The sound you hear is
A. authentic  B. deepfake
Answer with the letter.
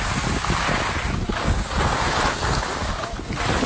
A